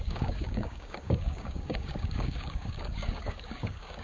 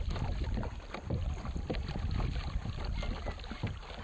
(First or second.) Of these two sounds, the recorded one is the second